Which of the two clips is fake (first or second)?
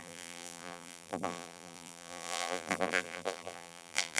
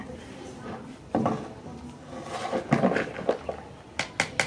first